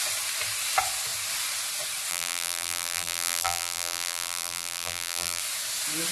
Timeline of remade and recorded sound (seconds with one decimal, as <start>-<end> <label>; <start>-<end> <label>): 0.0-2.1 recorded; 2.1-5.4 remade; 5.4-6.1 recorded